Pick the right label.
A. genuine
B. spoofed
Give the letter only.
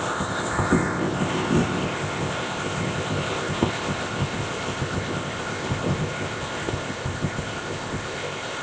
B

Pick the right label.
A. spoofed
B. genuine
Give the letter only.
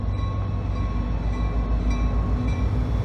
B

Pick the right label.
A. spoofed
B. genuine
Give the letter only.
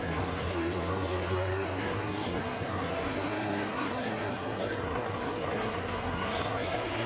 A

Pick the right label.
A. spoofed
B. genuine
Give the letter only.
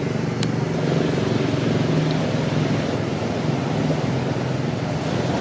B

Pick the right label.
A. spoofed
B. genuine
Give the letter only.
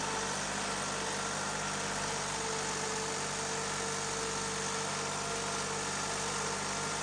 B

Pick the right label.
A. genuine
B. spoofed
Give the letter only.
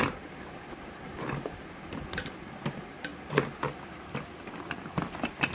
A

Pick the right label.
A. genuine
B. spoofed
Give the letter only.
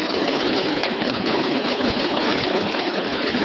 B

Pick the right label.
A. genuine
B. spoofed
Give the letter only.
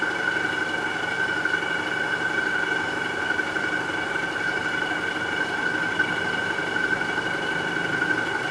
A